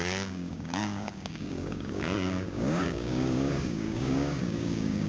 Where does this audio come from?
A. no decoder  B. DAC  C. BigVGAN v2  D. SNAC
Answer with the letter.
B